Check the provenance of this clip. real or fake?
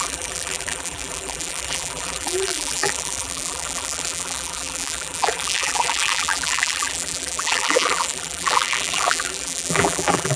fake